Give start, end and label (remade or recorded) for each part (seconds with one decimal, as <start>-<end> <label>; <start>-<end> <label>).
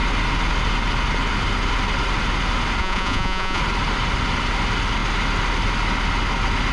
0.0-2.8 recorded; 2.8-3.6 remade; 3.6-6.7 recorded